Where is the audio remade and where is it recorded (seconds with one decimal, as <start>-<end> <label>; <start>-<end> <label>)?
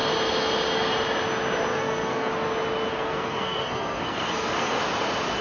0.0-1.7 recorded; 1.7-2.3 remade; 2.3-2.9 recorded; 2.9-4.8 remade; 4.8-5.4 recorded